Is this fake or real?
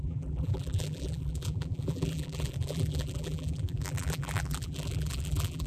fake